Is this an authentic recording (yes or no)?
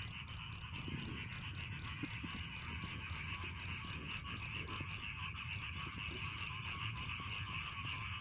yes